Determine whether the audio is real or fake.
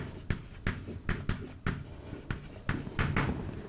real